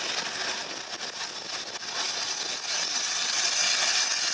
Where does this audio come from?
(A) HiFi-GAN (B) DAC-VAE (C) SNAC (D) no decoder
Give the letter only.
D